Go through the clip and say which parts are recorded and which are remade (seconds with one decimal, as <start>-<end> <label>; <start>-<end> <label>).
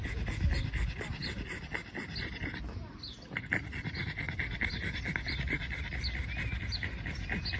0.0-7.6 recorded